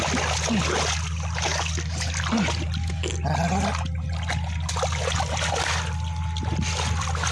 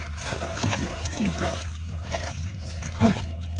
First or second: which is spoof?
second